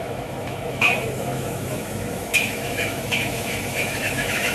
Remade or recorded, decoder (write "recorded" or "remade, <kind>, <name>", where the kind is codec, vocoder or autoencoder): remade, autoencoder, DAC-VAE